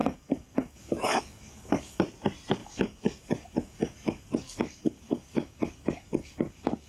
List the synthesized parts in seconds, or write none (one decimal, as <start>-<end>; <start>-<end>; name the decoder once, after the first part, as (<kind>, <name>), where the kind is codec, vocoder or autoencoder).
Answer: 0.0-2.0 (codec, DAC); 2.6-6.9